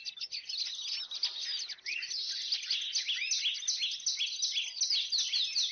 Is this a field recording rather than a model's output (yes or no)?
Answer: yes